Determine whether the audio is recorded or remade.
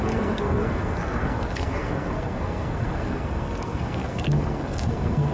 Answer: remade